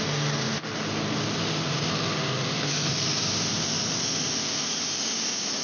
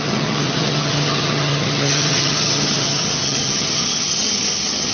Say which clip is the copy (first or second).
second